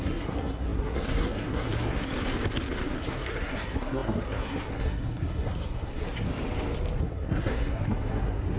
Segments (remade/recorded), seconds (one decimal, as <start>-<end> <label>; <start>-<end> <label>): 0.0-2.1 remade; 2.1-2.9 recorded; 2.9-6.3 remade; 6.3-7.0 recorded; 7.0-8.6 remade